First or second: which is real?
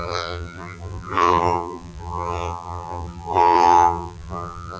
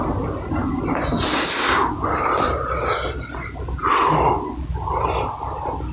second